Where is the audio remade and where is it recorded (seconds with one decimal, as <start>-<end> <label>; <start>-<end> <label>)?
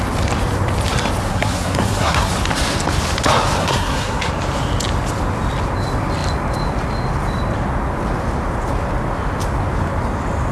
0.0-1.3 recorded; 1.3-2.3 remade; 2.3-3.6 recorded; 3.6-4.3 remade; 4.3-10.5 recorded